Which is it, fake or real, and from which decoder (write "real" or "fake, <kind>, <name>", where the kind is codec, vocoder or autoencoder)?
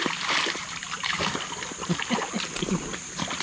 real